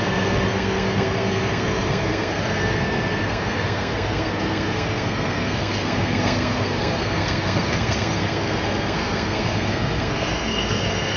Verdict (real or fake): fake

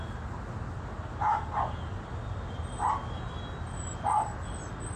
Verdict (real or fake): real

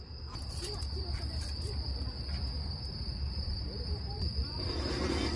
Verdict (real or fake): fake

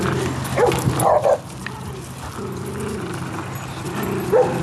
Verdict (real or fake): real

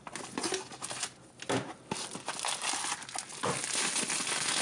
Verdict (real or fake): real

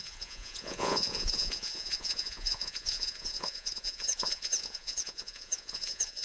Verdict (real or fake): fake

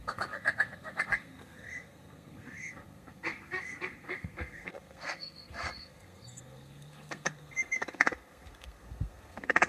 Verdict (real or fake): fake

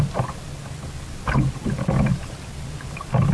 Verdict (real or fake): real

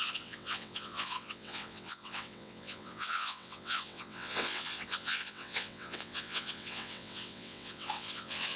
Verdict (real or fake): fake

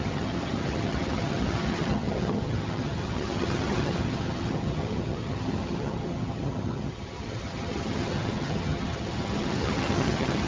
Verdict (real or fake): fake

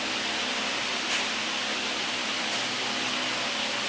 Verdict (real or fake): real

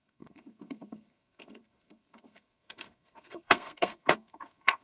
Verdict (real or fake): fake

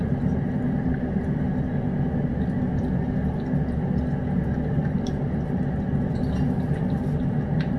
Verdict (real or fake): real